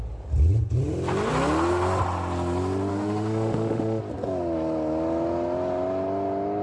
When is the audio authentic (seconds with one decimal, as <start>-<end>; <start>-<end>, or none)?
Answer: 0.0-2.9; 4.0-6.6